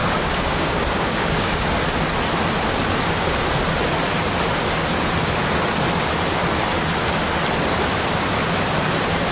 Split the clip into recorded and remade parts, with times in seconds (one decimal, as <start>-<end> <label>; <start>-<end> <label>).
0.0-1.7 remade; 1.7-9.3 recorded